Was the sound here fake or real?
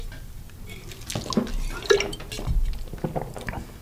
real